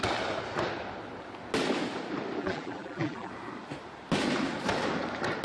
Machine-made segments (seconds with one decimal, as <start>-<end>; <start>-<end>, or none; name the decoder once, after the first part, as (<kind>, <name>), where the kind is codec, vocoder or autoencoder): 2.4-3.3 (vocoder, BigVGAN v2)